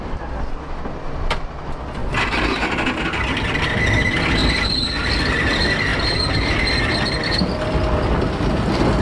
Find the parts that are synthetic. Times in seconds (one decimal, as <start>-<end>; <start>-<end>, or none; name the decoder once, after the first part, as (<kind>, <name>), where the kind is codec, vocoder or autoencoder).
none